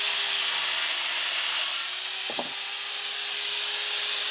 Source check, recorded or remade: recorded